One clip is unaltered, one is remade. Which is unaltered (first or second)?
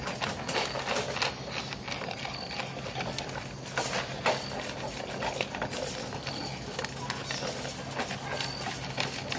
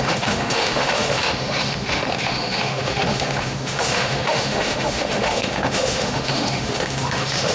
first